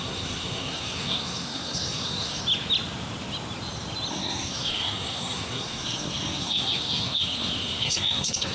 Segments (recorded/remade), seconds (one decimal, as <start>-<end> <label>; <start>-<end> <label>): 0.0-2.4 remade; 2.4-4.1 recorded; 4.1-8.5 remade